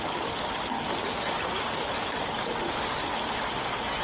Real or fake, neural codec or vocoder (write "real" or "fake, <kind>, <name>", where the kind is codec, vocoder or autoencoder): real